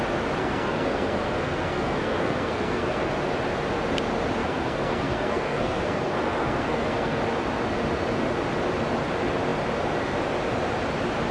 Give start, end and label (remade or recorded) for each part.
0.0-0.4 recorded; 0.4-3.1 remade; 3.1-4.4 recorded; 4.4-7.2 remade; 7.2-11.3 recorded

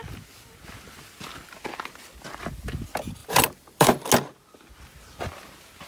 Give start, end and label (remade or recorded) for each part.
0.0-3.2 recorded; 3.2-4.1 remade; 4.1-5.9 recorded

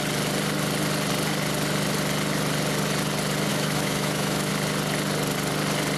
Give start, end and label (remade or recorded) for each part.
0.0-3.5 recorded; 3.5-4.5 remade; 4.5-6.0 recorded

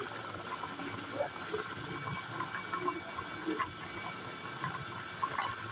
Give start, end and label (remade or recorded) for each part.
0.0-5.7 recorded

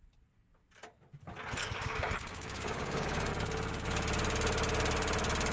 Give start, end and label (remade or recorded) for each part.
0.0-1.6 recorded; 1.6-3.3 remade; 3.3-5.5 recorded

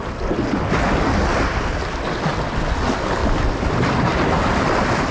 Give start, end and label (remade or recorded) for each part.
0.0-5.1 recorded

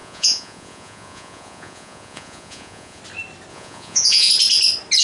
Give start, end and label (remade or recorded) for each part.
0.0-3.0 remade; 3.0-3.5 recorded; 3.5-4.3 remade; 4.3-5.0 recorded